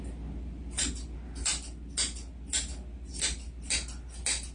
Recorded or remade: recorded